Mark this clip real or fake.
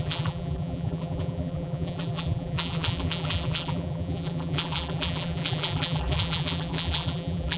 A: fake